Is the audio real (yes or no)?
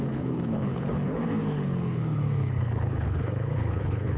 no